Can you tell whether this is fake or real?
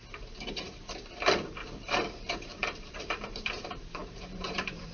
fake